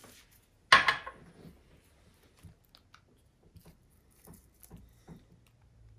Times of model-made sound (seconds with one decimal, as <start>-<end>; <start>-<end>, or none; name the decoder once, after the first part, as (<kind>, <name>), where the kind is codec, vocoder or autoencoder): none